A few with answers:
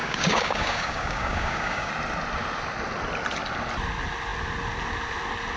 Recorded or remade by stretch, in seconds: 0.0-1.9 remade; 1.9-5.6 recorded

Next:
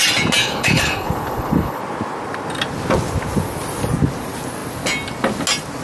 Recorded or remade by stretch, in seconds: 0.0-0.4 recorded; 0.4-1.8 remade; 1.8-5.8 recorded

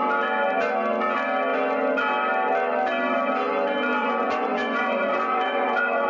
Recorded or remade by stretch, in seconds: 0.0-4.0 recorded; 4.0-6.1 remade

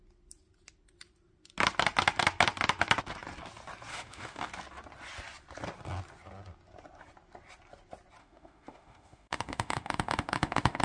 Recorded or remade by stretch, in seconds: 0.0-3.9 recorded; 3.9-4.5 remade; 4.5-8.2 recorded; 8.2-10.8 remade